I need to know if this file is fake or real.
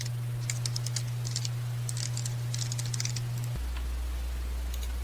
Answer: real